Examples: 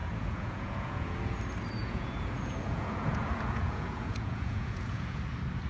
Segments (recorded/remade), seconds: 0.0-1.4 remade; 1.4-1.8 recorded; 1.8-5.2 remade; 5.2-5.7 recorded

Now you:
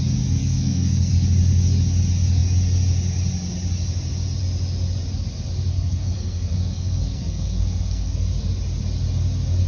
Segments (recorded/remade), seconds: 0.0-0.4 recorded; 0.4-1.1 remade; 1.1-5.7 recorded; 5.7-8.3 remade; 8.3-9.7 recorded

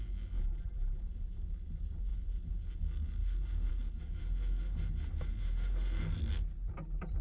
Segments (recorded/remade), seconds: 0.0-0.4 recorded; 0.4-1.0 remade; 1.0-7.2 recorded

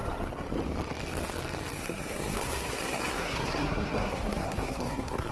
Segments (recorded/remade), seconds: 0.0-1.8 recorded; 1.8-5.3 remade

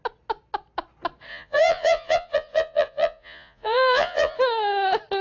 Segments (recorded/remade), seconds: 0.0-1.3 recorded; 1.3-4.4 remade; 4.4-5.2 recorded